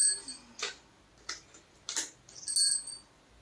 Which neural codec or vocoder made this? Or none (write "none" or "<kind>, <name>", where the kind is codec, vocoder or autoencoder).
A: none